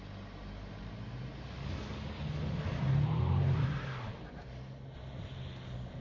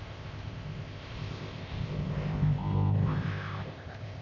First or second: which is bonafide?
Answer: first